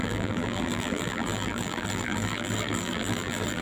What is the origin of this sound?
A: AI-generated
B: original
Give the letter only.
A